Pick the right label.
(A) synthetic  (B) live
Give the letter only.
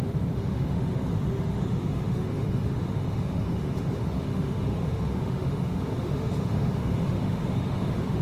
A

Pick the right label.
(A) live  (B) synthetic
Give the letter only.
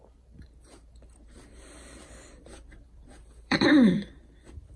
B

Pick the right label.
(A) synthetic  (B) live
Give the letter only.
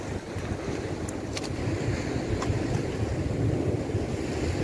B